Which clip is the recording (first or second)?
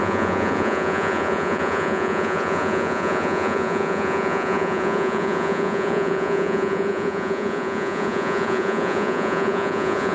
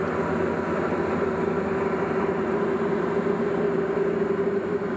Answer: second